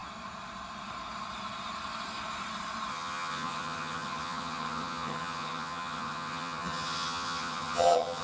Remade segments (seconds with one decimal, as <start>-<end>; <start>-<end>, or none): 2.9-8.2